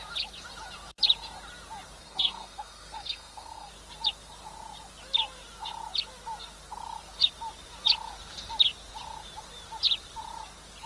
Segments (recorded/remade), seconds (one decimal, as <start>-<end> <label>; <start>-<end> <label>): 0.0-2.0 recorded; 2.0-3.7 remade; 3.7-10.9 recorded